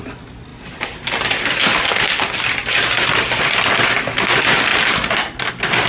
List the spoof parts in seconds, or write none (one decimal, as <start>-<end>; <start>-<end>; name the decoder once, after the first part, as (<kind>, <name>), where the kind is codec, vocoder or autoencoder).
none